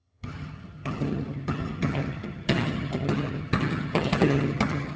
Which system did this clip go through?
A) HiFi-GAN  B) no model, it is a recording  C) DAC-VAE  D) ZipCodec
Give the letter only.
A